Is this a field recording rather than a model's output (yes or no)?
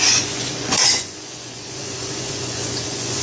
no